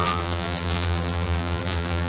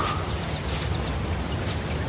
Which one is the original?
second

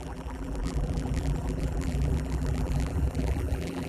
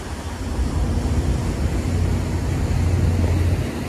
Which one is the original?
second